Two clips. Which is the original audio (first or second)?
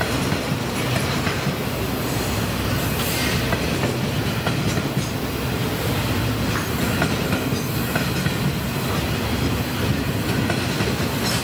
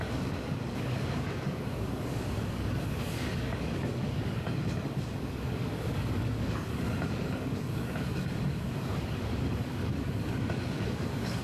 first